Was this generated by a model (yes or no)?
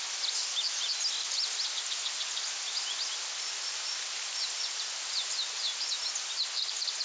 no